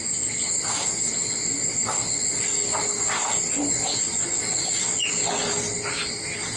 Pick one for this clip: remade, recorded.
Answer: recorded